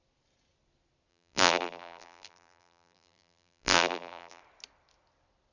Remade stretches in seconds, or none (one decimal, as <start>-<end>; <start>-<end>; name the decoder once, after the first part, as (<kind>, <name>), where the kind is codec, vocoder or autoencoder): 1.1-4.4 (vocoder, BigVGAN v2)